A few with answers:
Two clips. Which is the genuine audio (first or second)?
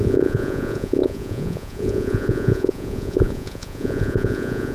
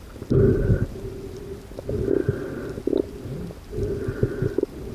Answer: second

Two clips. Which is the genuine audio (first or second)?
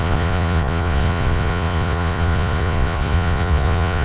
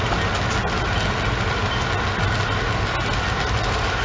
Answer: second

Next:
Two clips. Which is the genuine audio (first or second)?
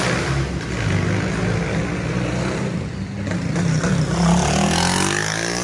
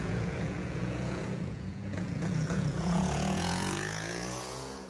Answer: first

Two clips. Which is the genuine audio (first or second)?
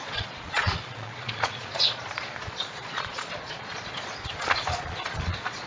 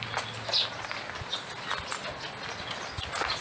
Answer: second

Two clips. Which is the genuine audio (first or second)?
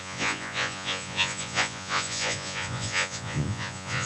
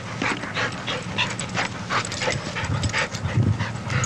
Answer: second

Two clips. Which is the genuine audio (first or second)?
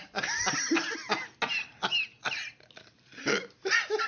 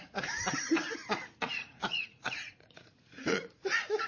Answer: first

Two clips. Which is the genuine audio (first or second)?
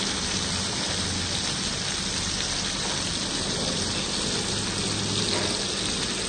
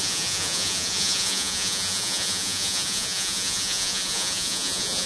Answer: first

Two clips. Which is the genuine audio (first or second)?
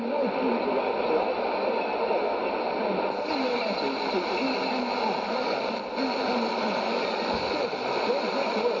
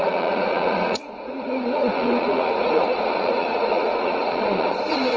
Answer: first